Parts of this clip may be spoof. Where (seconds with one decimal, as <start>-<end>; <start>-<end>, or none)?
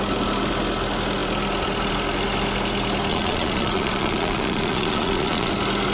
3.1-5.5